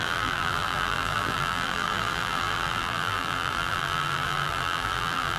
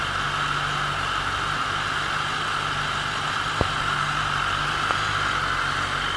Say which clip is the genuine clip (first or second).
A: second